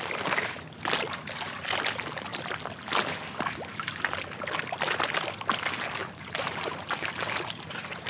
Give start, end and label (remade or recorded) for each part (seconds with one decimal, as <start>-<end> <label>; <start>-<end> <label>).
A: 0.0-6.0 recorded; 6.0-8.1 remade